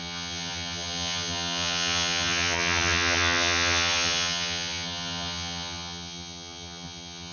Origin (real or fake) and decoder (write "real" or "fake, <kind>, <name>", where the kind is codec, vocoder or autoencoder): fake, vocoder, HiFi-GAN